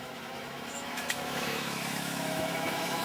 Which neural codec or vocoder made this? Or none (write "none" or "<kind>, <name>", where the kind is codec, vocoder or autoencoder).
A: autoencoder, DAC-VAE